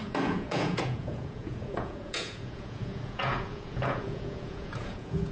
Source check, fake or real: fake